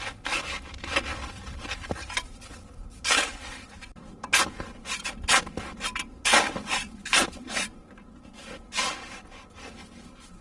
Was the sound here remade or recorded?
recorded